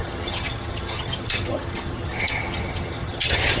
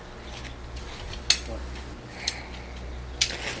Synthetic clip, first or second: first